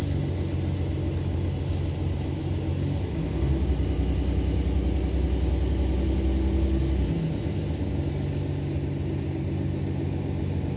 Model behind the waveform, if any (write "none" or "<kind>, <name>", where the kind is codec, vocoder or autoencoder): none